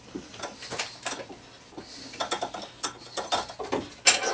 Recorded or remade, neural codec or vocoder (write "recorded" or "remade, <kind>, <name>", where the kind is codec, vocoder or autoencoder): recorded